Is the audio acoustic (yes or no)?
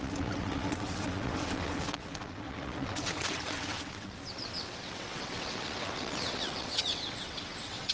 no